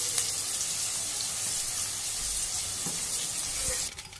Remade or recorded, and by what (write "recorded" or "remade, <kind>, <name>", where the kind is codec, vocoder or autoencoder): recorded